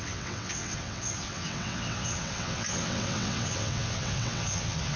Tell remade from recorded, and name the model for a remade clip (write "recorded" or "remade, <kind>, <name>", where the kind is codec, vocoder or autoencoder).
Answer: remade, vocoder, WaveNeXt